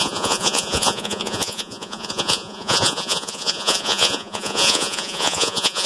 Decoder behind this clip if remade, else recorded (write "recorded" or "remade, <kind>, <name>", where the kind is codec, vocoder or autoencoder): remade, vocoder, Vocos